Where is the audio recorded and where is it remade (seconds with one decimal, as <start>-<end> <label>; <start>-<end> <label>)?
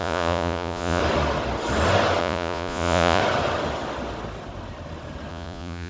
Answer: 0.0-1.0 remade; 1.0-2.2 recorded; 2.2-3.2 remade; 3.2-5.3 recorded; 5.3-5.9 remade